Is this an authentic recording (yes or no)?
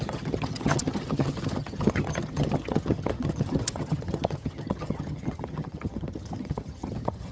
no